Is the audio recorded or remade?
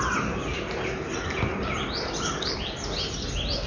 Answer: recorded